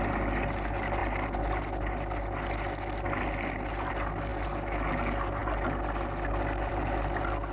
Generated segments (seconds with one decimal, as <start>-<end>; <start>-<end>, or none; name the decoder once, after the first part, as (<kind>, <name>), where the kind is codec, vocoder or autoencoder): none

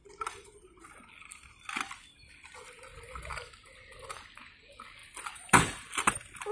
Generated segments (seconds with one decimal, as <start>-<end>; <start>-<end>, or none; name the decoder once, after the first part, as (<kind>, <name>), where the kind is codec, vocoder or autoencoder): none

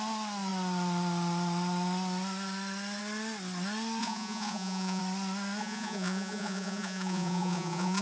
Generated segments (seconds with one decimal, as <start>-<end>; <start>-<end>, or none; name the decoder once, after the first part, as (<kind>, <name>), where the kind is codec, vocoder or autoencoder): 4.0-5.0 (vocoder, Vocos); 5.6-8.0